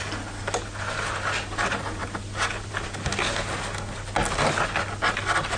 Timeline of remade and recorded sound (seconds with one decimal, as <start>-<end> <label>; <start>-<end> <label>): 0.0-5.6 recorded